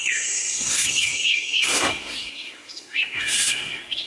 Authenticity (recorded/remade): remade